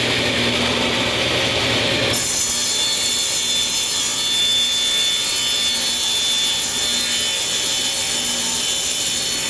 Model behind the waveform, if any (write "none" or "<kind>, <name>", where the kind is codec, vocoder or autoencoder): none